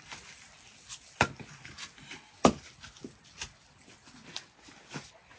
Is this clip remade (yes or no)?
no